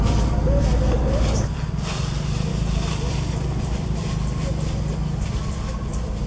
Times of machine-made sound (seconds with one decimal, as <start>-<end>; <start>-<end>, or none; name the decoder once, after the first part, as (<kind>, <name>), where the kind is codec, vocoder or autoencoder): none